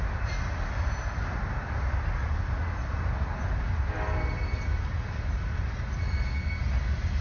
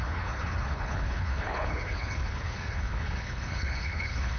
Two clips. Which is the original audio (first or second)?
first